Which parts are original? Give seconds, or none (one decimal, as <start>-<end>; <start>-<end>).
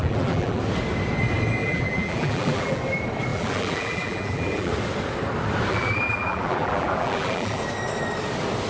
0.6-1.6; 2.8-3.3; 4.7-5.7; 7.6-8.7